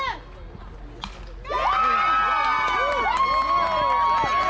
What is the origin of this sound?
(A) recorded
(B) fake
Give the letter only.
A